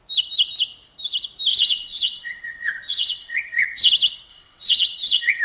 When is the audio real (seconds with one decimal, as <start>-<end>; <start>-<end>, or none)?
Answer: 0.0-1.5; 3.9-4.3